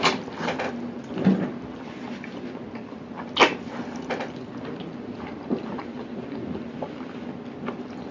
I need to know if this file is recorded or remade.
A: recorded